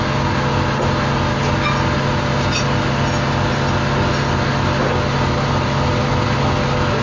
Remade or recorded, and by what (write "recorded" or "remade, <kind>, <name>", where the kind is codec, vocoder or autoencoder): recorded